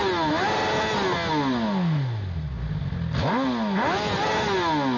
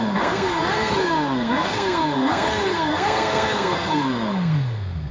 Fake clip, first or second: second